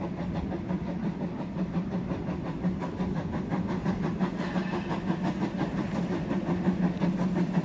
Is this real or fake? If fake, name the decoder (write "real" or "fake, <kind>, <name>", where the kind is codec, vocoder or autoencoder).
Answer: fake, vocoder, BigVGAN v2